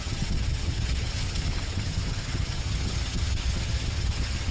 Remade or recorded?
remade